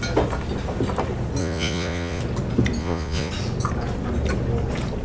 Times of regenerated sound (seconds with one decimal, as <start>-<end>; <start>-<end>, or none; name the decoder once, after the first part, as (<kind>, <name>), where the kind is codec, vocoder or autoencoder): 1.4-2.2 (vocoder, Vocos); 2.8-3.3